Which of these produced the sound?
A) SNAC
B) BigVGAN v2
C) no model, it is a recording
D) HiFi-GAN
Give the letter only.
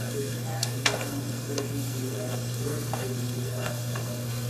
A